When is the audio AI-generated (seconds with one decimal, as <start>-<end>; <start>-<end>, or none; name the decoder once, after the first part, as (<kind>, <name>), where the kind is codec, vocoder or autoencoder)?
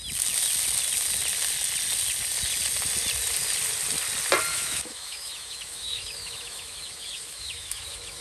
4.5-8.2 (autoencoder, DAC-VAE)